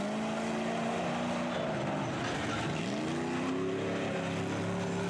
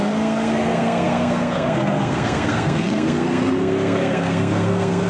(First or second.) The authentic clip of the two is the first